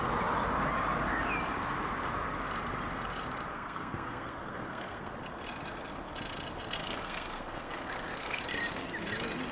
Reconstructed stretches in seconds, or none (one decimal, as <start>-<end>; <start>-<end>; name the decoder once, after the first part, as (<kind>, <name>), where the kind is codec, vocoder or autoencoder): 3.5-5.1 (codec, SNAC); 6.8-8.4